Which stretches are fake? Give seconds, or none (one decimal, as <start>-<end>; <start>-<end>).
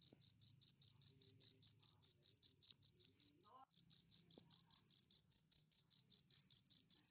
5.2-5.9